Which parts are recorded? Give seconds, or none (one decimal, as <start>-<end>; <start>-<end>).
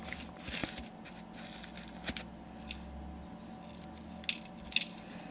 0.0-5.3